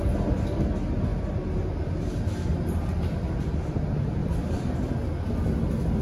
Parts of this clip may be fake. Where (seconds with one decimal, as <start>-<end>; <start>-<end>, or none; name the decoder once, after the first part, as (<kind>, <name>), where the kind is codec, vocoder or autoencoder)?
4.2-4.8 (vocoder, BigVGAN v2)